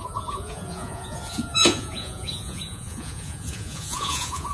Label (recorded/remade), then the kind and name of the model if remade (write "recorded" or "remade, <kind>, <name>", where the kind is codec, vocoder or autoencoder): remade, vocoder, Vocos